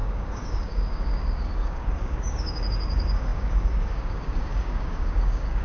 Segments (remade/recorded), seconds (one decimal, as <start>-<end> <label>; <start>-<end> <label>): 0.0-5.6 remade